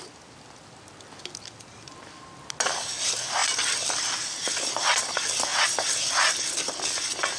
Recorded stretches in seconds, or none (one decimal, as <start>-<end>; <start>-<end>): 0.0-7.4